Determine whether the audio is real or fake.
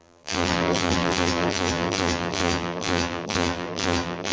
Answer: fake